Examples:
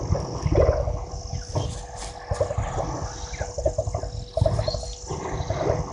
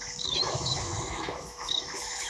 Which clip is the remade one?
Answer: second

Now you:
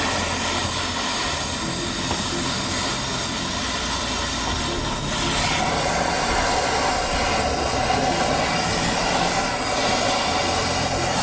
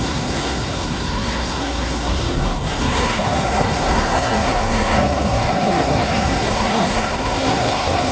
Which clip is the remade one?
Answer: second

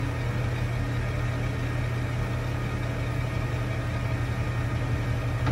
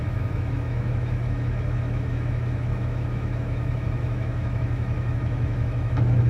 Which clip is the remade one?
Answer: second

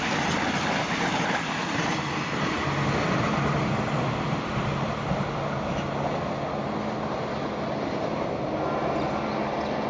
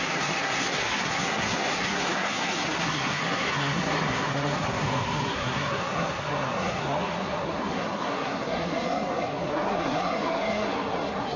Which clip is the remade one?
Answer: second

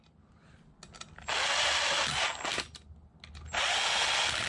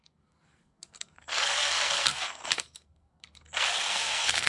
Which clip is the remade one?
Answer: second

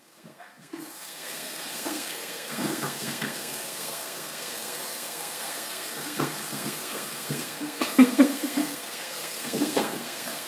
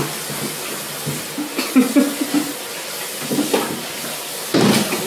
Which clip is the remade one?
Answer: first